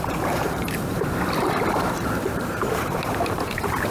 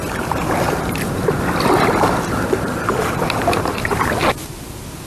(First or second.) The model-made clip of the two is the first